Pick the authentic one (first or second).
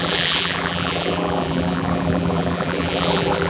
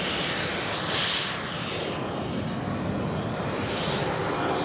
second